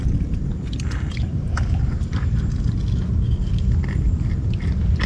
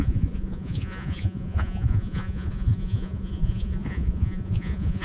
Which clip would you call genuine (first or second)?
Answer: first